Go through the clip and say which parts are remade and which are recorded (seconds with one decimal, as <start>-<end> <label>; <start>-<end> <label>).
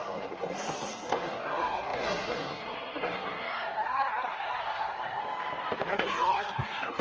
0.0-5.2 remade; 5.2-5.9 recorded; 5.9-7.0 remade